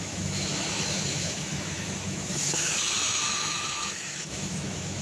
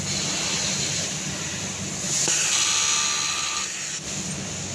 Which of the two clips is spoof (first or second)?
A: first